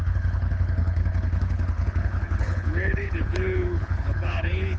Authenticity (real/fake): fake